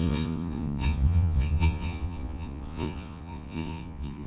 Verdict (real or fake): fake